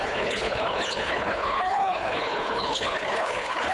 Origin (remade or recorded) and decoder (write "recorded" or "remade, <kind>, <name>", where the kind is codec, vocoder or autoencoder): remade, codec, HILCodec